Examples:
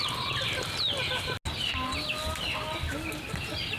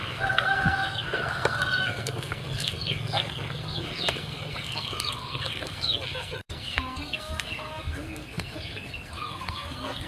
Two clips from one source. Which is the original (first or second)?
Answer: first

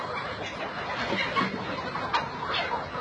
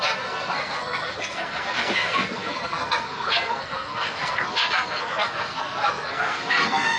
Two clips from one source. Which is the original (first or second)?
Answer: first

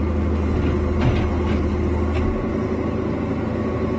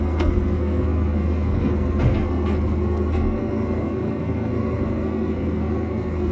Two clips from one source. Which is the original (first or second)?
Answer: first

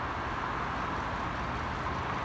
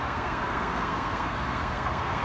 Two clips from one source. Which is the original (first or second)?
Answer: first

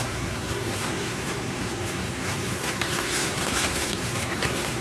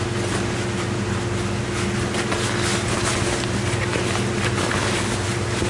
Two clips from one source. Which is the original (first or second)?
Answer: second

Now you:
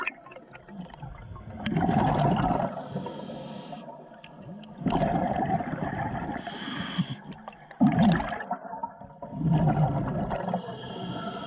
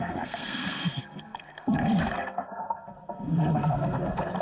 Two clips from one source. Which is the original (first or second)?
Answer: first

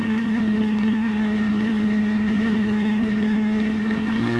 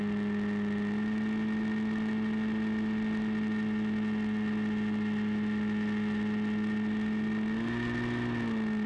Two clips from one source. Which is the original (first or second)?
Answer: second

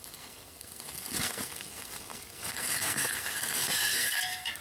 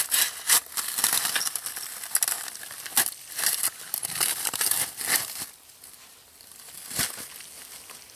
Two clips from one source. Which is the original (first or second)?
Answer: second